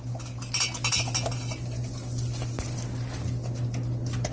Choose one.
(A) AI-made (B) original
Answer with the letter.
B